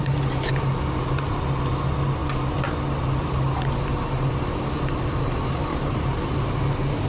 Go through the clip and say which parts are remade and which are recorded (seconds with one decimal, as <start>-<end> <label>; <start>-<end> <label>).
0.0-5.7 recorded; 5.7-6.3 remade; 6.3-7.1 recorded